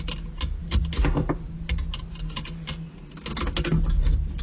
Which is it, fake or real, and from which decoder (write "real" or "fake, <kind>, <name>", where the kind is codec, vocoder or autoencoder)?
real